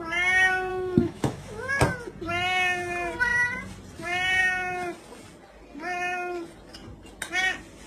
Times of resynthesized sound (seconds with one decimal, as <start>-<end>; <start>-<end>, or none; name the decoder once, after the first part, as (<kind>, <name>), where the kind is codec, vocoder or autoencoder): 0.7-1.7 (autoencoder, DAC-VAE)